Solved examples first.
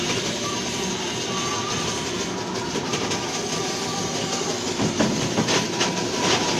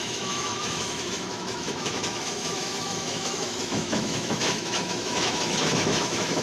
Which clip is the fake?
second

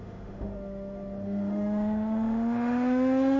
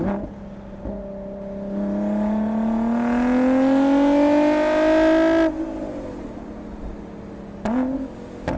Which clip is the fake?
first